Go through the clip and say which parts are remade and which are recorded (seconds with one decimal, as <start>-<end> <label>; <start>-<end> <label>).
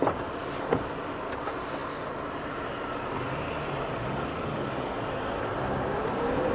0.0-4.3 recorded; 4.3-5.1 remade; 5.1-6.5 recorded